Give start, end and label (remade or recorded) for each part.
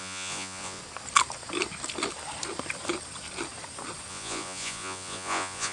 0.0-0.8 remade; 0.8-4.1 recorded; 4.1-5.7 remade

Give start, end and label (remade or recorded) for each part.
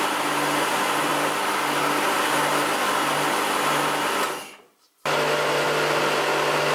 0.0-6.7 recorded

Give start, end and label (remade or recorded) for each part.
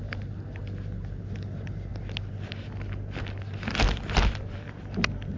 0.0-5.4 recorded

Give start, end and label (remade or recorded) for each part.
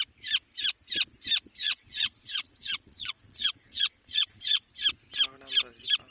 0.0-1.6 recorded; 1.6-4.7 remade; 4.7-6.1 recorded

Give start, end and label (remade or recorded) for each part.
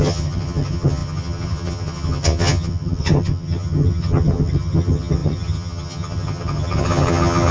0.0-7.5 remade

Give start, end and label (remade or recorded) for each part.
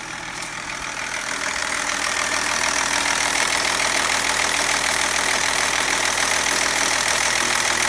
0.0-7.9 remade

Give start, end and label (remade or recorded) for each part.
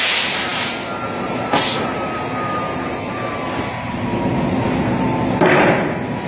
0.0-6.3 recorded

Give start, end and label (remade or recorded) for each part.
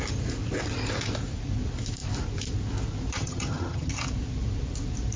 0.0-3.2 recorded; 3.2-3.9 remade; 3.9-5.2 recorded